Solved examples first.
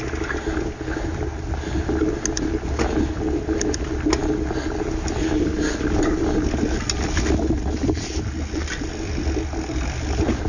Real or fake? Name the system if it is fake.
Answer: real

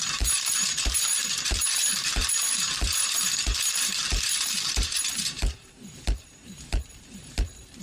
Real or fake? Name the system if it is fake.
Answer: fake, vocoder, BigVGAN v2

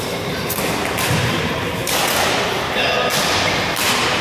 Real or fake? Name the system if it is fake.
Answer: real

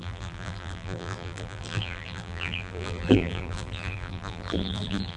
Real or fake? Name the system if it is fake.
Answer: fake, vocoder, BigVGAN v2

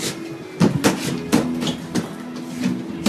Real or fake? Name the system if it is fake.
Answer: real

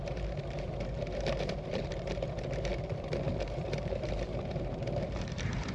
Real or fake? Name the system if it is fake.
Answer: fake, vocoder, BigVGAN v2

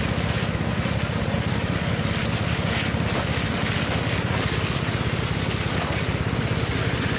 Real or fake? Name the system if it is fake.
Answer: real